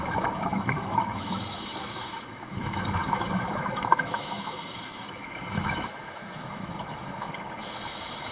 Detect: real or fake fake